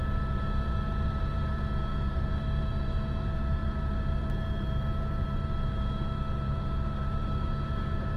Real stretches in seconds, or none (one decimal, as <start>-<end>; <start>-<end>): none